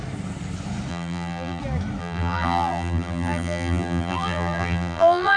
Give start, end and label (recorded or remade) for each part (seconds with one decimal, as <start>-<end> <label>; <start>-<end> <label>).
0.0-0.9 recorded; 0.9-1.6 remade; 1.6-2.0 recorded; 2.0-5.4 remade